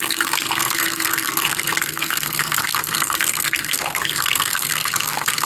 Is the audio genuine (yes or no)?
no